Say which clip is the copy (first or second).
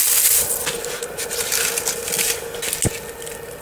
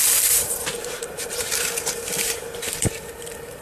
second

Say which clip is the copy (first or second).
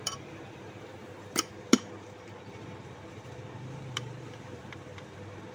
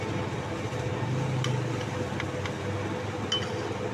first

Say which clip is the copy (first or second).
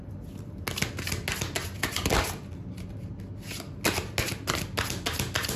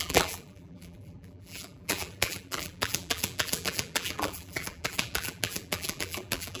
second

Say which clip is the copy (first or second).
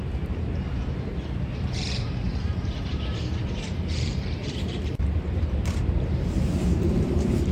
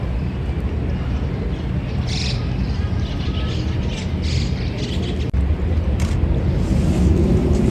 first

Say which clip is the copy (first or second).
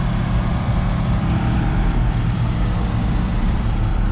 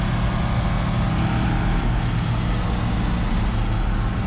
first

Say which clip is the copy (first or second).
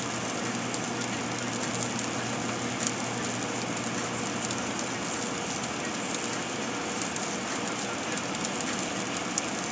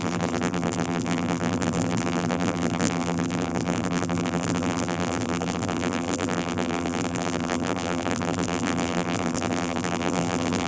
second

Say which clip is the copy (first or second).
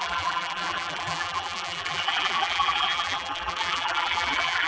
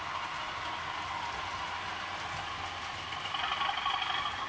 first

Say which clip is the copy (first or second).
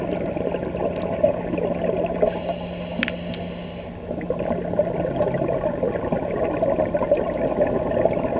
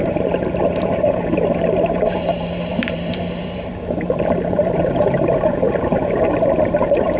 second